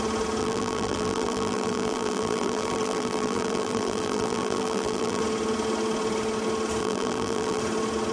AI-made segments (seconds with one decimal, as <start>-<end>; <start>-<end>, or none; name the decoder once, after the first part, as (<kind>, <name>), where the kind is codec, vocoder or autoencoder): 0.4-5.2 (vocoder, BigVGAN v2); 6.8-7.6